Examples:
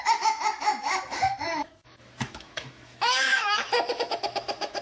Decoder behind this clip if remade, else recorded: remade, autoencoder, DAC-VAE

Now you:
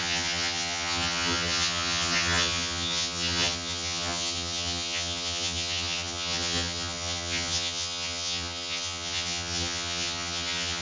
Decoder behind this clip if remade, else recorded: remade, vocoder, HiFi-GAN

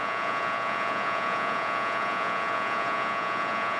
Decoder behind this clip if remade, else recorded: remade, vocoder, Vocos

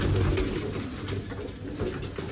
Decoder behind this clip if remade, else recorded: recorded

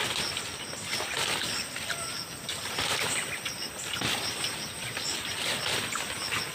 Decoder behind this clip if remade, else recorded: recorded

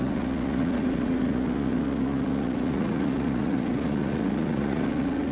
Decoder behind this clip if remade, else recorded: remade, vocoder, Vocos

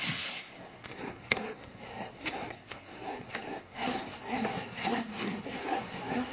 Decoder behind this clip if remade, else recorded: remade, codec, SNAC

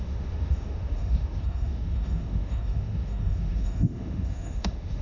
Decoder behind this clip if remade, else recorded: remade, autoencoder, DAC-VAE